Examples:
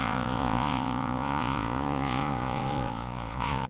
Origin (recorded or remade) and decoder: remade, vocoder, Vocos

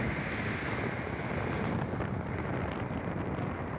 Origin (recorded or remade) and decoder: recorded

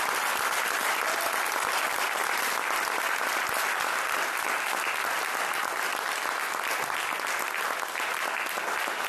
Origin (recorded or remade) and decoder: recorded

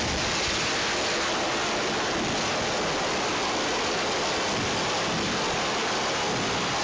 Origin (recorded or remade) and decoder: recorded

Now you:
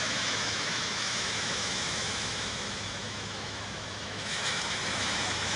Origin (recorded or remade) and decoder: remade, autoencoder, DAC-VAE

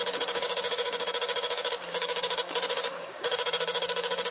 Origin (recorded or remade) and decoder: remade, codec, DAC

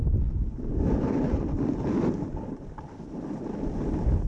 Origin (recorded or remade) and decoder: recorded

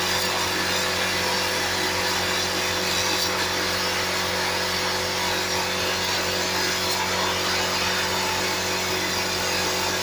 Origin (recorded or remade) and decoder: recorded